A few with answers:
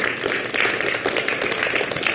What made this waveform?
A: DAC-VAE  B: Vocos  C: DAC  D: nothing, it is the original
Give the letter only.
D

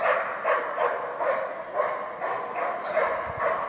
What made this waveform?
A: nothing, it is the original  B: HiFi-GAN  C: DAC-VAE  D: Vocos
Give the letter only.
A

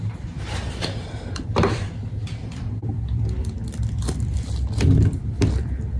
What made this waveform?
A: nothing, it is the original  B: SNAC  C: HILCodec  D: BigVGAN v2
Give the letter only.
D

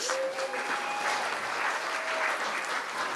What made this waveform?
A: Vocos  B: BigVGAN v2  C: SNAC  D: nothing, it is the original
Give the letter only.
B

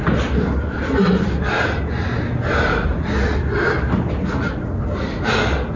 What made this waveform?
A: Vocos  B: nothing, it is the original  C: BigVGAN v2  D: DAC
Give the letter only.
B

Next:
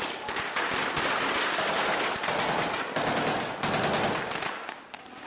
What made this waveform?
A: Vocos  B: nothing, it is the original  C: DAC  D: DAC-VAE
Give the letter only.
B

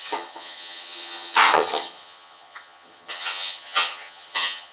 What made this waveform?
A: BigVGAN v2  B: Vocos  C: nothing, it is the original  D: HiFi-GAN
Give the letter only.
D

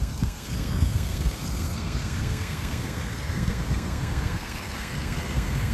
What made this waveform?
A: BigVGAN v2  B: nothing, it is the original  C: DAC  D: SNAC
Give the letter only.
D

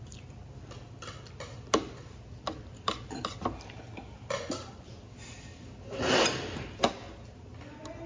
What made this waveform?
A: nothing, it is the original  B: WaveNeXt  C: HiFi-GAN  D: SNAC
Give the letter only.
A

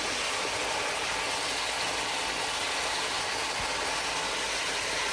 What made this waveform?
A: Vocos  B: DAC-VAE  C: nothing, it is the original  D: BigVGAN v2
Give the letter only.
C